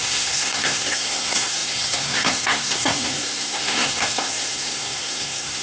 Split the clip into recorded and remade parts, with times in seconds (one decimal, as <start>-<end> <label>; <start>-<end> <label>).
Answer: 0.0-5.6 remade